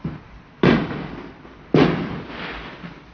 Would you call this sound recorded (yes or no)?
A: yes